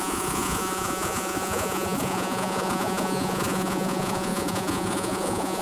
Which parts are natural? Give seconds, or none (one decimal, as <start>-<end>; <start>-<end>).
none